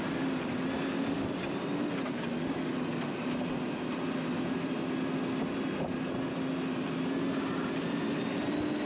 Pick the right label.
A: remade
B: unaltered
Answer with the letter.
B